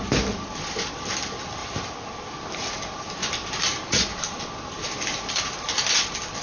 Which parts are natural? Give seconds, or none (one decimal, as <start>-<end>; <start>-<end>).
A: 3.4-4.5